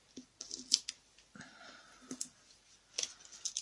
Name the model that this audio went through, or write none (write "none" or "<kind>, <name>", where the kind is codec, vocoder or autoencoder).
none